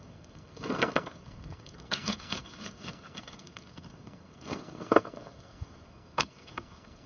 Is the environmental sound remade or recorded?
remade